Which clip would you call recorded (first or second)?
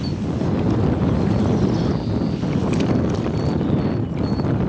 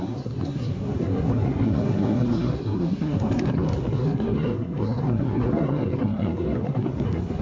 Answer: first